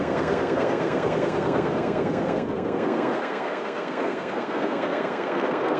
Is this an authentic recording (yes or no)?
no